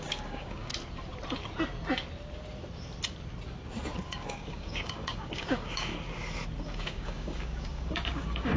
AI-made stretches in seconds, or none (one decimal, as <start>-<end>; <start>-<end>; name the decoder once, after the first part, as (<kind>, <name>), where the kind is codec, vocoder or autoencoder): 0.0-0.7 (codec, DAC); 4.0-5.9; 6.6-8.6